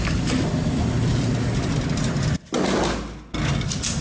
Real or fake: real